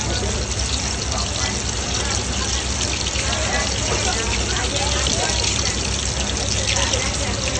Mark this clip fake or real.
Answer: real